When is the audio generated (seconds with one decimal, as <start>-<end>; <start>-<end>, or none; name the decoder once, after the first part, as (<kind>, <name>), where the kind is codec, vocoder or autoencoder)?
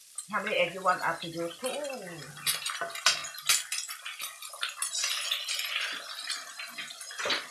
none